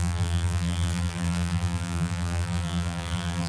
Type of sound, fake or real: fake